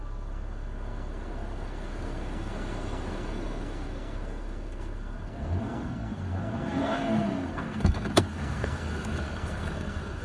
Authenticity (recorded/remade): remade